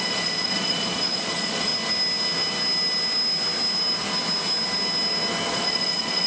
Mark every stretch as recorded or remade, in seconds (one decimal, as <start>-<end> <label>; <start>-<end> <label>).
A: 0.0-1.7 remade; 1.7-5.5 recorded; 5.5-6.3 remade